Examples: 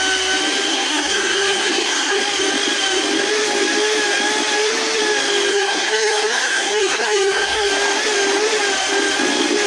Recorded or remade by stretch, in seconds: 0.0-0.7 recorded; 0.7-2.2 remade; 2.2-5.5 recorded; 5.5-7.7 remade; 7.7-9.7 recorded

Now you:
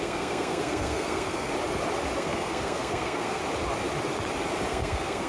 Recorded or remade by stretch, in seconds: 0.0-1.5 remade; 1.5-2.2 recorded; 2.2-3.4 remade; 3.4-4.7 recorded; 4.7-5.3 remade

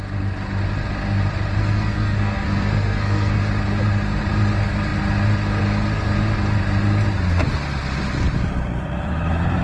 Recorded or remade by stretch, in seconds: 0.0-1.6 recorded; 1.6-3.4 remade; 3.4-9.6 recorded

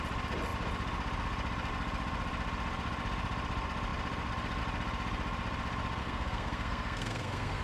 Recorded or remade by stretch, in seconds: 0.0-6.0 recorded; 6.0-7.6 remade

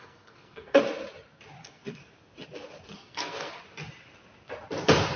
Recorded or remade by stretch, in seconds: 0.0-0.8 remade; 0.8-1.6 recorded; 1.6-2.0 remade; 2.0-2.9 recorded; 2.9-3.6 remade; 3.6-5.2 recorded

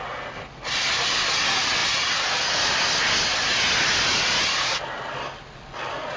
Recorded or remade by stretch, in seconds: 0.0-6.2 recorded

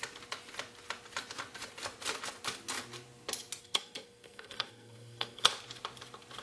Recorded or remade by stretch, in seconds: 0.0-3.6 recorded; 3.6-5.5 remade; 5.5-6.4 recorded